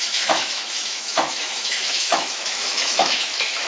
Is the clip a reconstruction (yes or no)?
yes